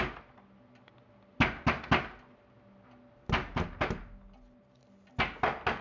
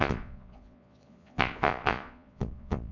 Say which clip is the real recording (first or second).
first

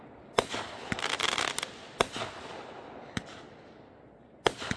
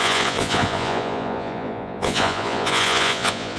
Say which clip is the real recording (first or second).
first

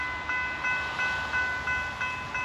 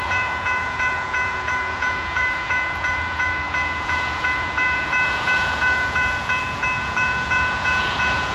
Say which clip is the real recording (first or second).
first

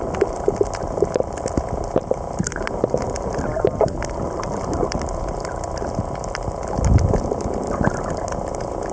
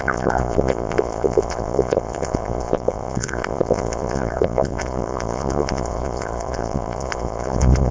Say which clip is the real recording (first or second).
first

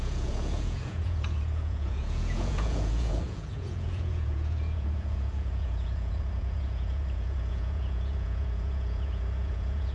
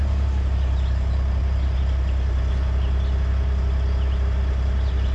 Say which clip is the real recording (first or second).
second